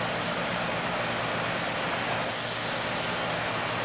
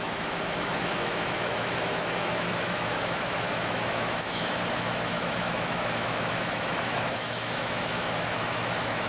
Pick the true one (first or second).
first